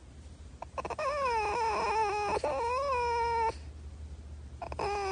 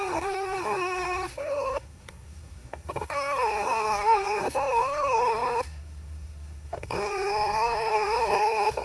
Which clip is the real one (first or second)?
first